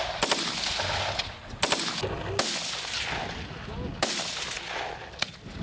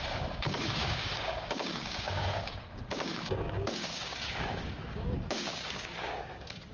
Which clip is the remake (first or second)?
second